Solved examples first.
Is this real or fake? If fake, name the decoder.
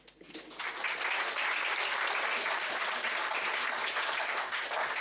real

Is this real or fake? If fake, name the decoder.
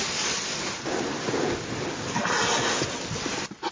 real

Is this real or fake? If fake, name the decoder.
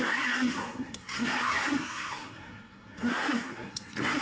fake, codec, SNAC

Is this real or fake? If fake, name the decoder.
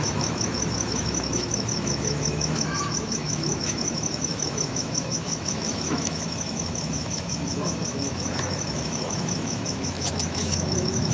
fake, autoencoder, DAC-VAE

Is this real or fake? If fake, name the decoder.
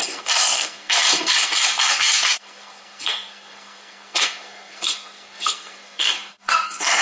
fake, codec, SNAC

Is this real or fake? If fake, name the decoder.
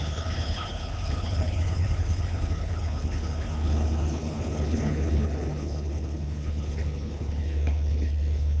fake, codec, HILCodec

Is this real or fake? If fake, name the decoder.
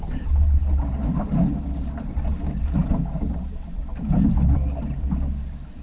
real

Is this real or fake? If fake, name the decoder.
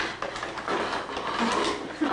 real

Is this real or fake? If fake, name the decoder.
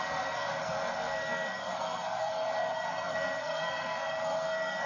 fake, codec, SNAC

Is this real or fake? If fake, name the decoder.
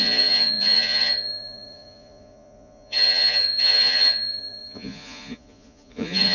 fake, vocoder, Vocos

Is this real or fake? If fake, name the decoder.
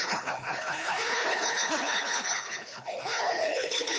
fake, codec, HILCodec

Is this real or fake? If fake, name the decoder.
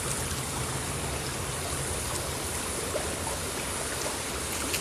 real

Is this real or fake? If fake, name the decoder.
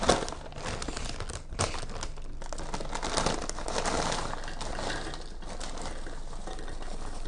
real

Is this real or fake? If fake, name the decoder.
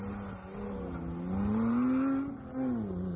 real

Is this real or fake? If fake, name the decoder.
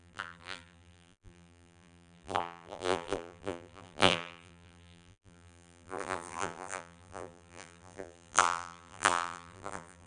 fake, vocoder, BigVGAN v2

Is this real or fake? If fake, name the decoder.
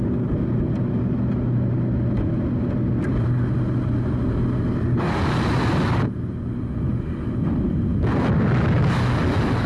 real